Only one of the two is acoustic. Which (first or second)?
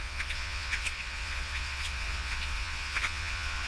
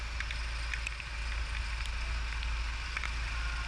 second